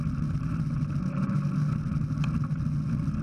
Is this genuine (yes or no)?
yes